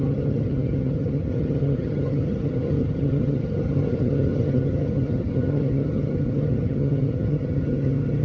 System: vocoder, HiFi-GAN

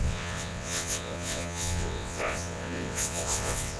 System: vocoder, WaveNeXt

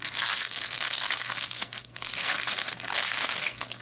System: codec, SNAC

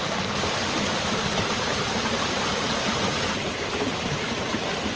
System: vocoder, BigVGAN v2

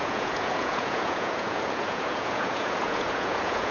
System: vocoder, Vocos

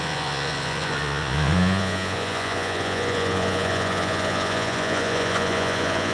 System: vocoder, Vocos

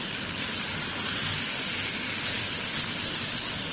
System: none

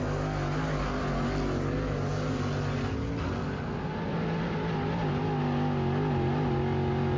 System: none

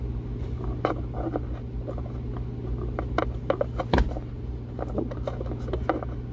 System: none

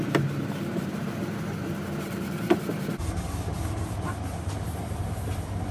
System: vocoder, BigVGAN v2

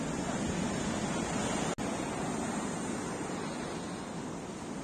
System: none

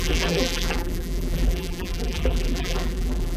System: vocoder, BigVGAN v2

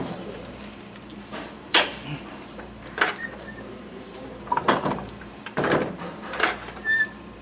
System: vocoder, BigVGAN v2